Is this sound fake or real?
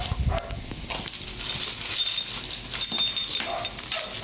real